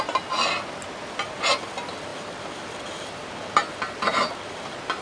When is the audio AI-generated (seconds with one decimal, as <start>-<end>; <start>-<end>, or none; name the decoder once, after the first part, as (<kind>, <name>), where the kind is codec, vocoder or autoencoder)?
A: none